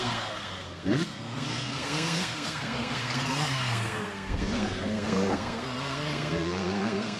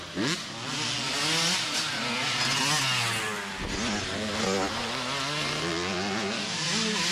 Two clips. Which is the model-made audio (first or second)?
first